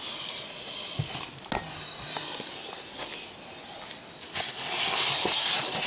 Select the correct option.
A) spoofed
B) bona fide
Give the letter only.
B